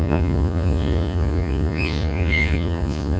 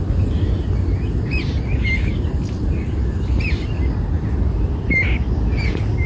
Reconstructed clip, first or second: first